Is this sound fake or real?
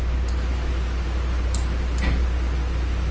real